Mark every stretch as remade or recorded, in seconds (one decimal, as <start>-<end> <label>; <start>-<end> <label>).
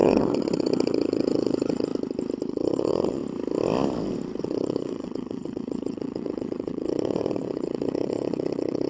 0.0-1.9 remade; 1.9-2.5 recorded; 2.5-3.2 remade; 3.2-4.4 recorded; 4.4-8.9 remade